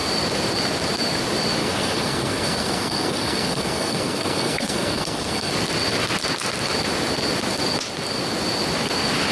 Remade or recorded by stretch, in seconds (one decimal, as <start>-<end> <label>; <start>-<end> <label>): 0.0-1.6 recorded; 1.6-5.5 remade; 5.5-9.3 recorded